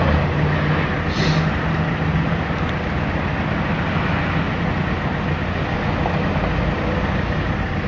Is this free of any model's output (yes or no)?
yes